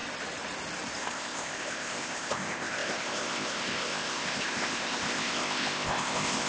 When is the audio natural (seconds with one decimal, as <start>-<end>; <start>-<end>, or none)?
0.0-1.0